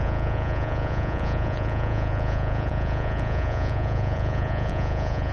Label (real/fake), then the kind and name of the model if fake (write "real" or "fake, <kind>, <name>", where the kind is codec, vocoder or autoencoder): fake, vocoder, Vocos